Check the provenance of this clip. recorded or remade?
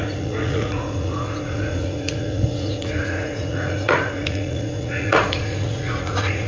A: remade